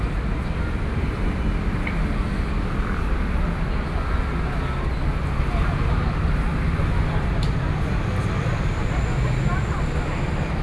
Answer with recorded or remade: recorded